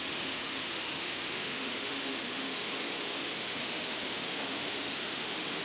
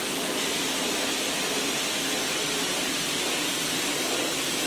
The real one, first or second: second